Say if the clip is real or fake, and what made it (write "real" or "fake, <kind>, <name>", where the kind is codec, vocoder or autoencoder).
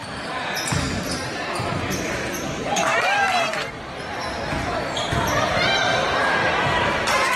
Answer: fake, vocoder, BigVGAN v2